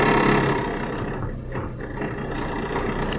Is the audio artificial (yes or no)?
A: no